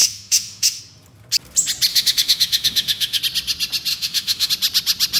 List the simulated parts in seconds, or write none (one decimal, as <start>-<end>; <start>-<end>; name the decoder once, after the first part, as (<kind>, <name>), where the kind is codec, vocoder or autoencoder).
0.0-0.8 (autoencoder, DAC-VAE); 1.9-3.2; 3.9-4.5